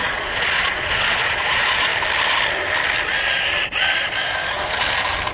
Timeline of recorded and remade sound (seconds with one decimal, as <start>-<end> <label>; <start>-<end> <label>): 0.0-1.9 remade; 1.9-5.3 recorded